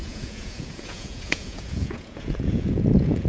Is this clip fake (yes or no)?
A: yes